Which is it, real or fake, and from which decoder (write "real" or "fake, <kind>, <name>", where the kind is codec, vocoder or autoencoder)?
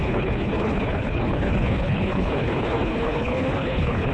fake, codec, HILCodec